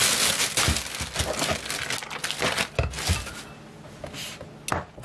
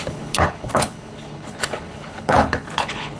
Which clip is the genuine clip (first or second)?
first